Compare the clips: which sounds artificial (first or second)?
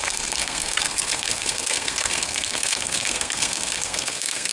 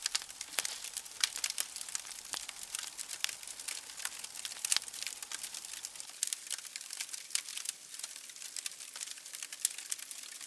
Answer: first